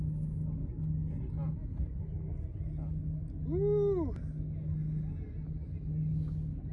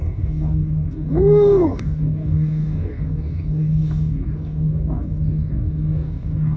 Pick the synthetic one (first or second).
second